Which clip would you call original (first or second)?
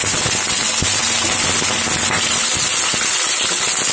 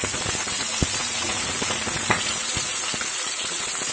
first